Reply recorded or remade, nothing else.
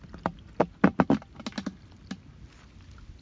recorded